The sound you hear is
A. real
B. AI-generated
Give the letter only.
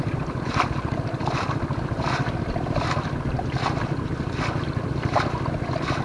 B